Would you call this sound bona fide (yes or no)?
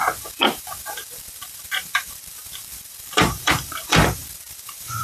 no